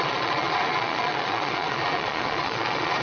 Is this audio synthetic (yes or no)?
yes